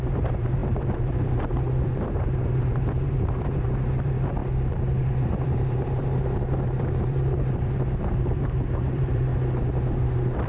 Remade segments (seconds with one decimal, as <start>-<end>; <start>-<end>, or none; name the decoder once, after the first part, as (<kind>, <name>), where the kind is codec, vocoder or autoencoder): 0.0-4.4 (vocoder, BigVGAN v2); 5.0-9.3; 9.9-10.5